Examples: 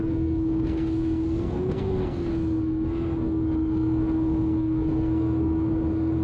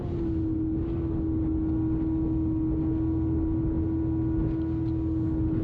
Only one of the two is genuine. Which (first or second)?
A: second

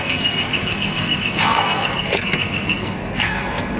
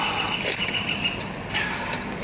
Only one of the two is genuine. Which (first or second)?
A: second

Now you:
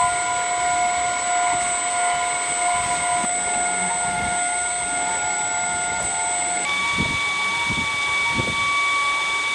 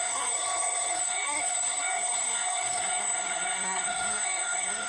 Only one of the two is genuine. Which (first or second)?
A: first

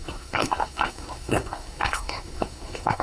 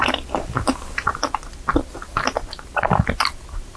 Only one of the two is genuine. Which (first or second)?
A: second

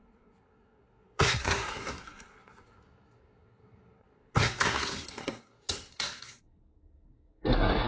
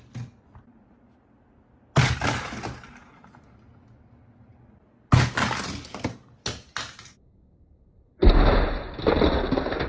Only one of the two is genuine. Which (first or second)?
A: second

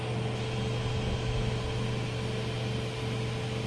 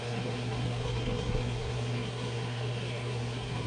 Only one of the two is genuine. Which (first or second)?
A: first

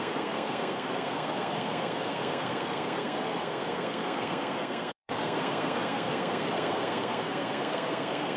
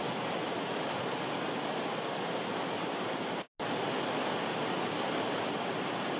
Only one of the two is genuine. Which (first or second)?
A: second